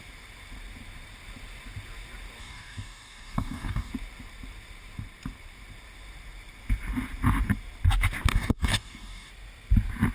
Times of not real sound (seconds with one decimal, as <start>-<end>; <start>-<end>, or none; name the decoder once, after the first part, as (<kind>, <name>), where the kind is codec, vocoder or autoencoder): 2.4-3.9 (codec, DAC); 8.3-9.3